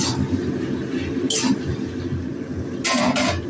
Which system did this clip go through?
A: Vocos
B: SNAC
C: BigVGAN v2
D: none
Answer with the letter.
D